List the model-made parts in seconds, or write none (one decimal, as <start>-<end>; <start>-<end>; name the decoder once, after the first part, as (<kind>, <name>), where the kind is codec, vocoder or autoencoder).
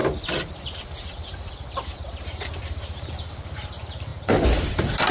0.0-3.1 (vocoder, BigVGAN v2); 4.1-5.1